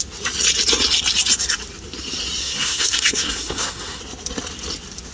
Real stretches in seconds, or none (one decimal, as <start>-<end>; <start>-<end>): 0.0-2.4; 4.0-5.1